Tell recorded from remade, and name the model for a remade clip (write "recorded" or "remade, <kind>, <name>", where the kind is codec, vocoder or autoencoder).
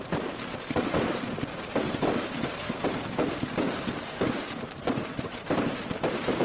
remade, vocoder, BigVGAN v2